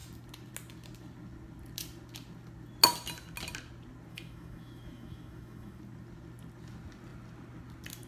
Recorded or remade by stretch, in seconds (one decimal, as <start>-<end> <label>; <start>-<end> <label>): 0.0-4.1 recorded; 4.1-5.8 remade; 5.8-8.1 recorded

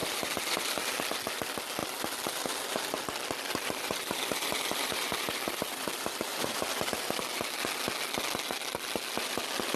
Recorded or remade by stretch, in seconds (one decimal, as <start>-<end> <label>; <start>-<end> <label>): 0.0-1.0 remade; 1.0-1.8 recorded; 1.8-7.1 remade; 7.1-9.8 recorded

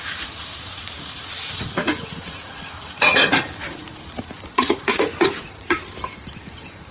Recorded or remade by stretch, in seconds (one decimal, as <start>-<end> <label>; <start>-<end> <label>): 0.0-5.8 remade; 5.8-6.4 recorded; 6.4-6.9 remade

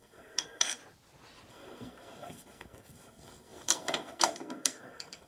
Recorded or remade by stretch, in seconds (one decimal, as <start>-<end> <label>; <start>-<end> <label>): 0.0-0.8 remade; 0.8-1.5 recorded; 1.5-5.3 remade